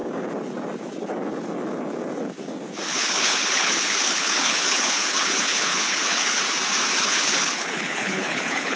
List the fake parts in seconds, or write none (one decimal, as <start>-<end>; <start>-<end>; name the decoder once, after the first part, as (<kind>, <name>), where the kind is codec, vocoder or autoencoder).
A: 2.9-6.4 (codec, HILCodec); 6.9-8.8